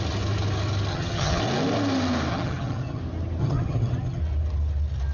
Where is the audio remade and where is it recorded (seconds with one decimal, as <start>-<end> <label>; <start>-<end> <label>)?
0.0-0.9 recorded; 0.9-1.4 remade; 1.4-2.3 recorded; 2.3-3.0 remade; 3.0-3.4 recorded; 3.4-4.2 remade; 4.2-5.1 recorded